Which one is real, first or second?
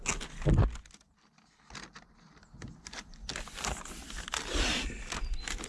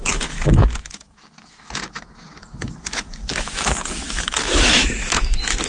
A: first